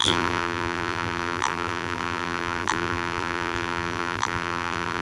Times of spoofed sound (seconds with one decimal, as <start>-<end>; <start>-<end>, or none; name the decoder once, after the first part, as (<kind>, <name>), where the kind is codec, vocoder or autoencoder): 0.0-5.0 (vocoder, BigVGAN v2)